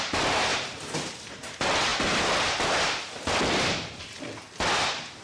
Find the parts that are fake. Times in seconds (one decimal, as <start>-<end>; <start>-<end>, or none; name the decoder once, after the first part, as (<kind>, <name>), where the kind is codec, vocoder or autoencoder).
none